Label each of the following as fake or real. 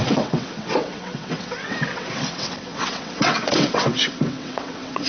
fake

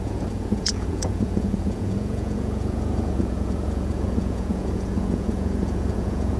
fake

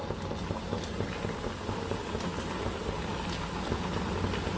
real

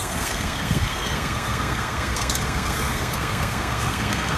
fake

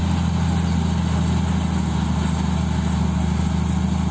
real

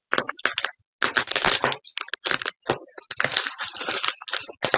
real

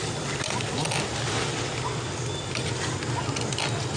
real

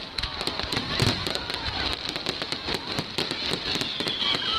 real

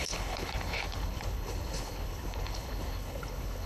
fake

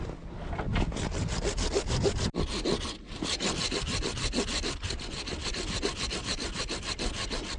real